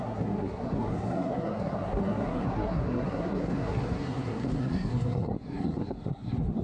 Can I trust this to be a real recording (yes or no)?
no